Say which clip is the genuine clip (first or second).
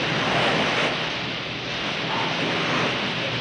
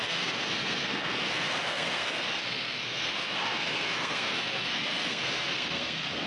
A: first